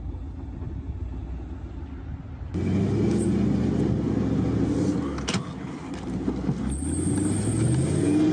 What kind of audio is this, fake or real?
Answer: real